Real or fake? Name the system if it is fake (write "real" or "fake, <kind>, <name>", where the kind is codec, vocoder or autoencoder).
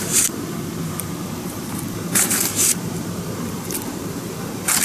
fake, vocoder, BigVGAN v2